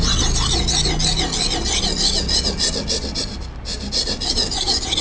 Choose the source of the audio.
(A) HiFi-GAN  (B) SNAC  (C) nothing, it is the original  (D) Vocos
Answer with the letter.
C